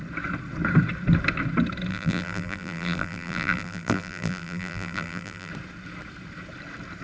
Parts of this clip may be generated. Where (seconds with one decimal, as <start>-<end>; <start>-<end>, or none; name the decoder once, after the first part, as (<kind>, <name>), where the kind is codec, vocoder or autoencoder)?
1.9-5.5 (vocoder, BigVGAN v2)